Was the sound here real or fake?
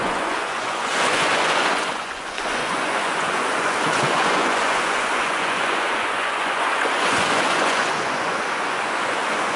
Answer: fake